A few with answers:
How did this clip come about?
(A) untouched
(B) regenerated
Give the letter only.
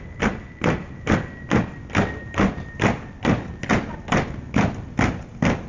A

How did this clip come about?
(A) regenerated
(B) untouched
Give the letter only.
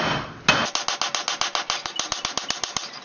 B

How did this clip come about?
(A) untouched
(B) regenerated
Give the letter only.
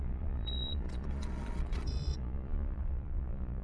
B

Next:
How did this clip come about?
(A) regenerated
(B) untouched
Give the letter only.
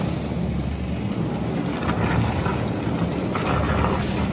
B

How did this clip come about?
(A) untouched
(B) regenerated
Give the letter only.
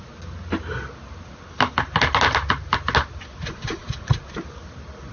A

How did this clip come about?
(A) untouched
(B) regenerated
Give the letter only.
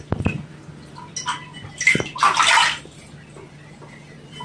A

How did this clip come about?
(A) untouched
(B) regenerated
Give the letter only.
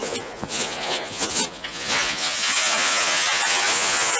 B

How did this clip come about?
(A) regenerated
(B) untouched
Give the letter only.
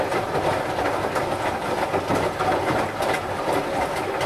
B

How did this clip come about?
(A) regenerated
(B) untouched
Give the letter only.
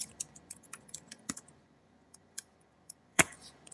A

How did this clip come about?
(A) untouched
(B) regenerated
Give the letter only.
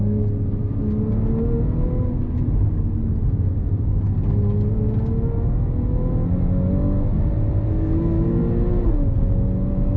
A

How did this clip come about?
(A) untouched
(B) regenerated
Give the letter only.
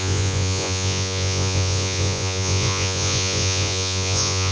B